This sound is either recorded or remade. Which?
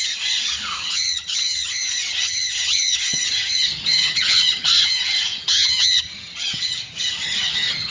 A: remade